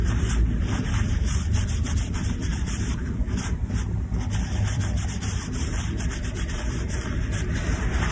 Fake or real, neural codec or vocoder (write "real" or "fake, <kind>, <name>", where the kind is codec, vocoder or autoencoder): fake, vocoder, BigVGAN v2